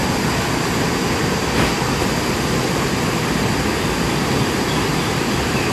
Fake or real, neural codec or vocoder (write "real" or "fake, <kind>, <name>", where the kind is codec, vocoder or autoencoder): real